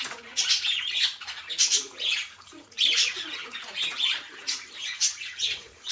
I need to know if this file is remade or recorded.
remade